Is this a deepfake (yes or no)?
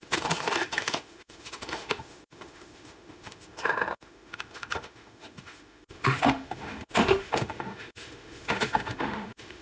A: yes